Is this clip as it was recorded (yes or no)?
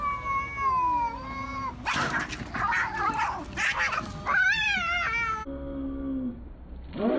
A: yes